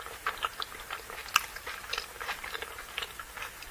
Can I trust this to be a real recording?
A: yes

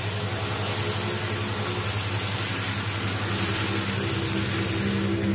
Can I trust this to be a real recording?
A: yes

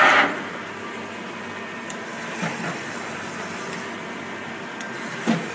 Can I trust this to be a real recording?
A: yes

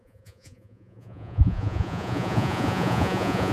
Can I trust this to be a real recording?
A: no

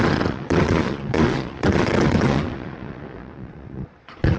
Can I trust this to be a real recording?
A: no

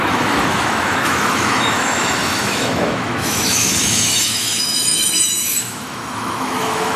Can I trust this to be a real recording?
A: no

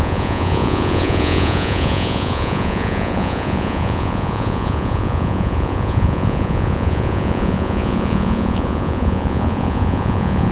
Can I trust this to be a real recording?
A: no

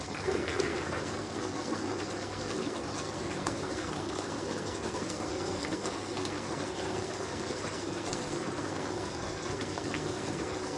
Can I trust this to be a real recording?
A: no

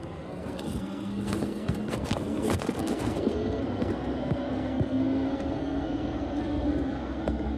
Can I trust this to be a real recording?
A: no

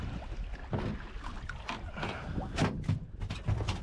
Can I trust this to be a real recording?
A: yes